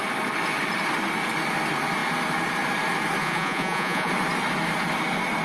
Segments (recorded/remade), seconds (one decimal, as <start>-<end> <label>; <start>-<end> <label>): 0.0-3.2 recorded; 3.2-4.1 remade; 4.1-5.4 recorded